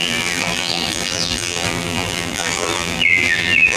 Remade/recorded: remade